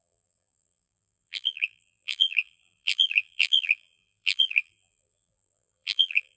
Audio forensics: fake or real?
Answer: fake